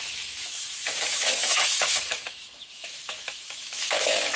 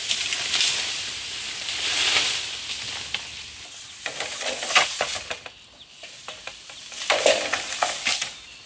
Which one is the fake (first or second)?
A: first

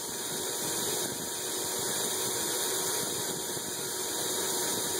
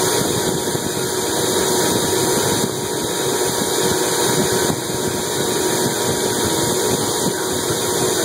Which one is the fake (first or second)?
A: first